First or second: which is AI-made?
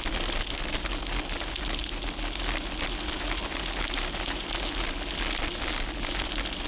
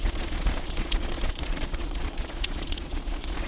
second